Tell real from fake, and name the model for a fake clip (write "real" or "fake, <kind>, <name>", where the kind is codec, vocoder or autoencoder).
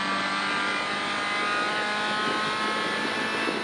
real